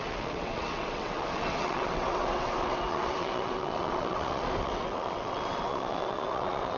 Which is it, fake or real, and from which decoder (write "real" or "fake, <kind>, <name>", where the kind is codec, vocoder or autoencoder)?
fake, vocoder, WaveNeXt